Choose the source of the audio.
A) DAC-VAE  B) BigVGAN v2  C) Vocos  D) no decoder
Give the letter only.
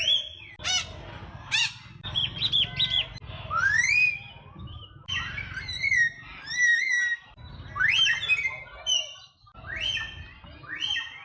D